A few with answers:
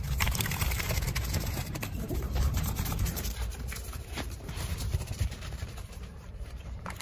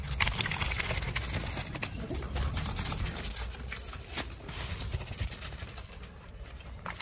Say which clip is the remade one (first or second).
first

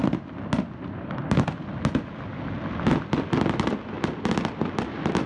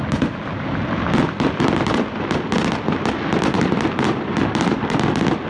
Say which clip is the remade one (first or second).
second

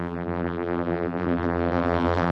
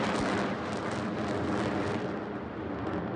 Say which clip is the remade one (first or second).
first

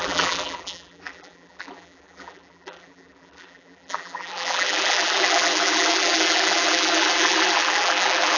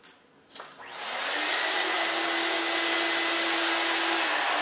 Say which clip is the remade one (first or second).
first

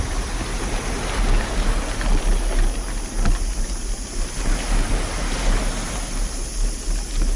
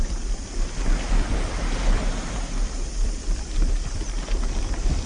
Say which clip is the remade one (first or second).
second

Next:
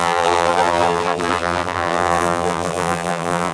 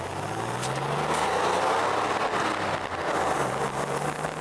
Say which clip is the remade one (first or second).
first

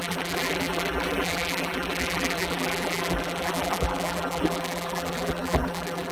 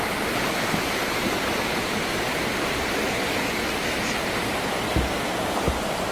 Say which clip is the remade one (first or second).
first